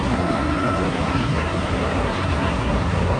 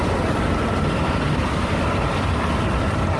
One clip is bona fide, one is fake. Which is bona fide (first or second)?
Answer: second